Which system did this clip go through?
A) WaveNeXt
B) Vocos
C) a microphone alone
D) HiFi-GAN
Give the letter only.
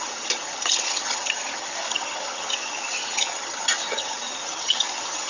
D